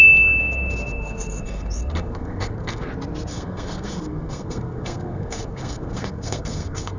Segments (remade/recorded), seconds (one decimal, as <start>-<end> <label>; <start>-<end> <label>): 0.0-0.4 recorded; 0.4-2.9 remade; 2.9-3.3 recorded; 3.3-7.0 remade